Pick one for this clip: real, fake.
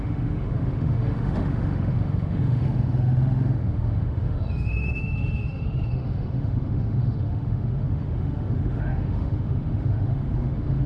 fake